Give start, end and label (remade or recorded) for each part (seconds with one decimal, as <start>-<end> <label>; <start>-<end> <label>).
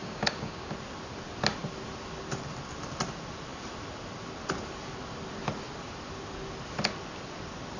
0.0-0.7 remade; 0.7-7.8 recorded